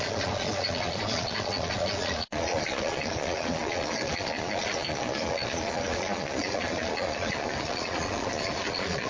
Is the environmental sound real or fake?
fake